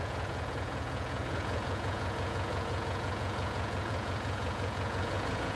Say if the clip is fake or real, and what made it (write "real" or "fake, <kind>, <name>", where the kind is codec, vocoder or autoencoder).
fake, vocoder, Vocos